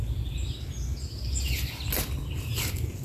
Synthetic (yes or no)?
no